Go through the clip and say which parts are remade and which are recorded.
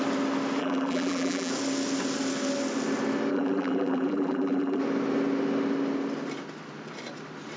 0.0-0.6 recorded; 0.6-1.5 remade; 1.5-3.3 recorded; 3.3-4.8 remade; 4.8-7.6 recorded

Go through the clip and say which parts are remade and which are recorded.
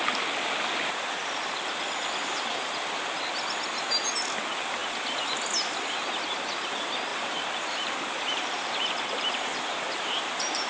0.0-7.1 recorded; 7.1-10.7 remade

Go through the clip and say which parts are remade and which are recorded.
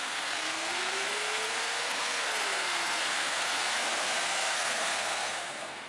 0.0-5.9 remade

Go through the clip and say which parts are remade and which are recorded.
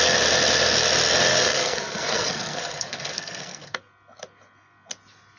0.0-1.3 recorded; 1.3-3.8 remade; 3.8-5.4 recorded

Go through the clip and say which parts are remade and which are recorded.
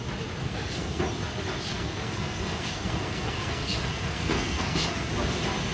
0.0-0.4 recorded; 0.4-1.0 remade; 1.0-1.7 recorded; 1.7-5.1 remade; 5.1-5.7 recorded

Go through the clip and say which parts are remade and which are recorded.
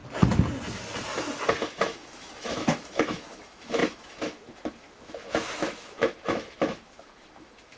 0.0-1.7 recorded; 1.7-7.8 remade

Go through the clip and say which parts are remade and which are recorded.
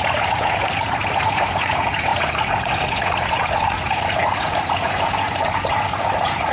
0.0-6.5 remade